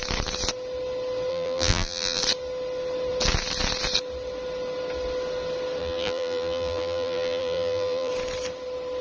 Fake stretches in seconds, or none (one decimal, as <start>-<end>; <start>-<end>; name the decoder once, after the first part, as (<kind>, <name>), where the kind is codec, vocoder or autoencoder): 1.3-2.2 (vocoder, BigVGAN v2); 5.8-8.1

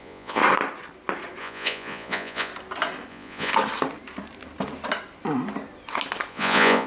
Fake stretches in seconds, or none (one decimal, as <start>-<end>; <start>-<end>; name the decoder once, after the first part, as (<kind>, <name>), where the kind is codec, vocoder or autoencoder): 0.0-0.4 (vocoder, Vocos); 1.4-2.5; 3.1-3.5; 6.3-6.9

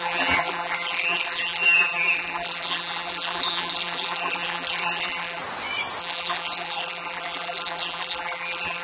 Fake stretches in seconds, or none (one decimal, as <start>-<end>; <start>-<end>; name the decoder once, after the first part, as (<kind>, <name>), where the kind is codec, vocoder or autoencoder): 0.0-5.4 (vocoder, BigVGAN v2); 6.0-8.8